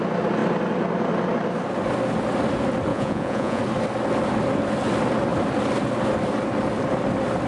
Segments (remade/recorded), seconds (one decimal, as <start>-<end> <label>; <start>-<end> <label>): 0.0-2.9 recorded; 2.9-3.6 remade; 3.6-7.5 recorded